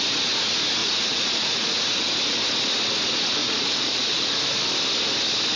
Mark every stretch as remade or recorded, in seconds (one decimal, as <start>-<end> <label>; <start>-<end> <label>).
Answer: 0.0-0.8 recorded; 0.8-2.1 remade; 2.1-3.4 recorded; 3.4-4.4 remade; 4.4-5.6 recorded